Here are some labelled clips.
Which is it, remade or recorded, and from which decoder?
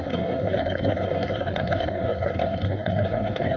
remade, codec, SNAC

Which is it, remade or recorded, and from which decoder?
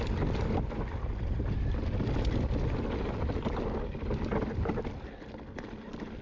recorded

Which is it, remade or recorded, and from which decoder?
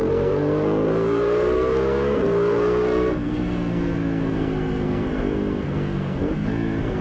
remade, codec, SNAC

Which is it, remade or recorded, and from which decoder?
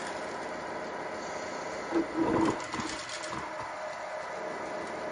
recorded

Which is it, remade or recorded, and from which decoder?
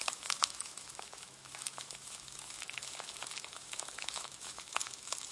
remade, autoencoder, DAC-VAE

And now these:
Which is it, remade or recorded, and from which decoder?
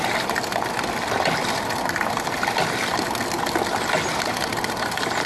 recorded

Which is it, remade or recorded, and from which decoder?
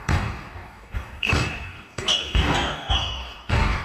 remade, codec, DAC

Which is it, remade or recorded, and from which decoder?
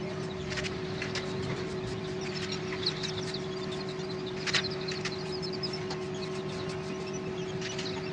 recorded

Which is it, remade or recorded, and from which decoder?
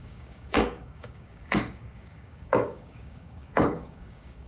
remade, codec, DAC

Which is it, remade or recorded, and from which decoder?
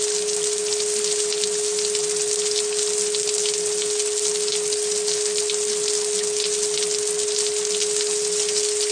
recorded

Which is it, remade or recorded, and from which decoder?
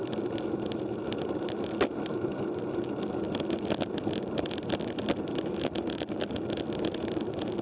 recorded